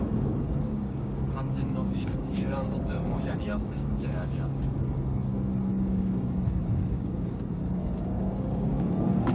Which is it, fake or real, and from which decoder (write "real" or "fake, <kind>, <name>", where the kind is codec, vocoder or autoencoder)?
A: fake, codec, DAC